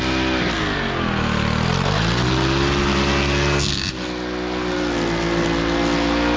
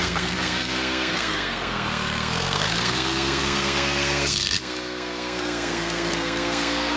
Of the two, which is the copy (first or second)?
second